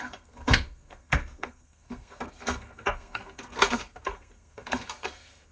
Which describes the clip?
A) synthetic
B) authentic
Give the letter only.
A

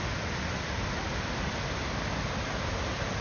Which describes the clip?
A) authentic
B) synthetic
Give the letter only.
A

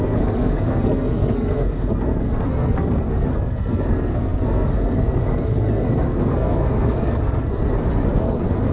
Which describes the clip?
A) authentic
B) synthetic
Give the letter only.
B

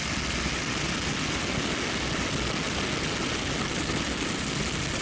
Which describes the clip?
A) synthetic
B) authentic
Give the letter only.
B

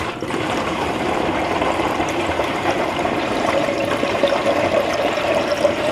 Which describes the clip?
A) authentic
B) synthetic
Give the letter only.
B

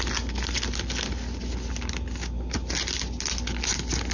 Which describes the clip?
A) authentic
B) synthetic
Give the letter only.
A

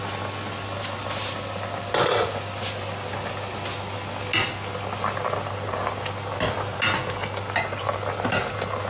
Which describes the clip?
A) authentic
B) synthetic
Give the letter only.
A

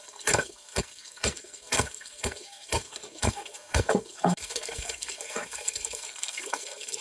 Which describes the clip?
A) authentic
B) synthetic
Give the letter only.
B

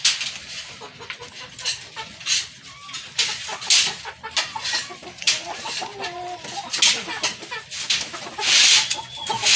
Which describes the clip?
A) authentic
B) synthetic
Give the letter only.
A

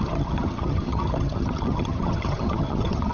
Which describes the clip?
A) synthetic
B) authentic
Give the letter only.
A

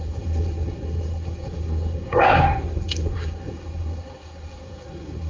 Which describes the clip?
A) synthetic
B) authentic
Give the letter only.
A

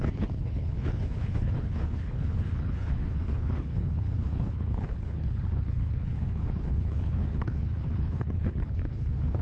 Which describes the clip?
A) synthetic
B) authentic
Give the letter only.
A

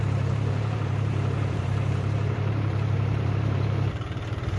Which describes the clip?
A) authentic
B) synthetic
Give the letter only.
B